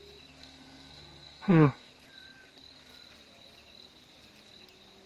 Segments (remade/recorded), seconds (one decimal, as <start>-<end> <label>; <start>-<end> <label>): 0.0-0.4 recorded; 0.4-1.9 remade; 1.9-5.1 recorded